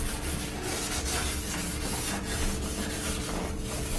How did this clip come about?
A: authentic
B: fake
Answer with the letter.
A